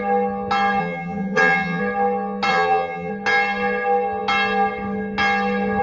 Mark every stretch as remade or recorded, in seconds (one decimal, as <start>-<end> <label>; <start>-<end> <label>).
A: 0.0-0.8 recorded; 0.8-1.8 remade; 1.8-2.5 recorded; 2.5-3.1 remade; 3.1-5.8 recorded